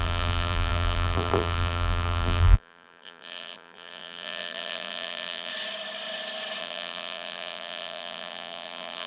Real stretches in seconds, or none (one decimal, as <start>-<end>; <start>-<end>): 5.5-6.6